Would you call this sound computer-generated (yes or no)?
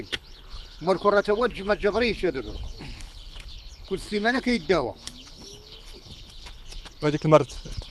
yes